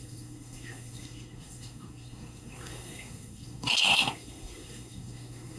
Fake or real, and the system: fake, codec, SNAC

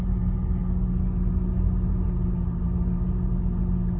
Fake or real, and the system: real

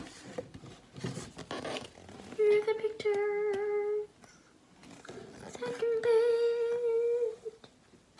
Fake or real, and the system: real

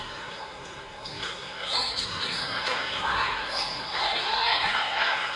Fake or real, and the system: fake, codec, SNAC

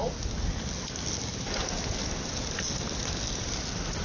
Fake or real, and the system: real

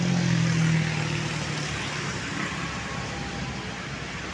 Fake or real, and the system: real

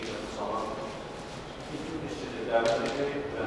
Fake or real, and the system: real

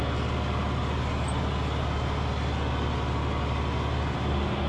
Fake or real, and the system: real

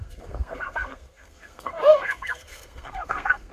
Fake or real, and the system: fake, codec, SNAC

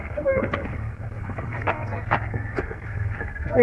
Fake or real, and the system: fake, codec, SNAC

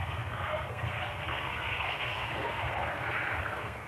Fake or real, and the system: fake, codec, SNAC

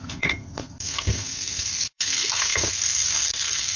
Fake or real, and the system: fake, codec, SNAC